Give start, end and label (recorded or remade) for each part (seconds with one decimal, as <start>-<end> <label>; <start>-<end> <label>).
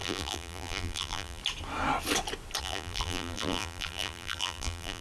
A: 0.0-1.4 remade; 1.4-2.6 recorded; 2.6-5.0 remade